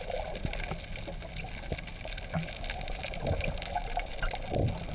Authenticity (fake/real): real